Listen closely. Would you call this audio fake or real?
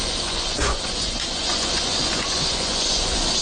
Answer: fake